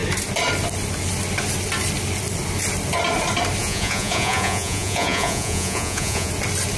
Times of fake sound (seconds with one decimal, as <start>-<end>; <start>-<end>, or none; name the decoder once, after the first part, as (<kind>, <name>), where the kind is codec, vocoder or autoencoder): 3.6-6.3 (vocoder, Vocos)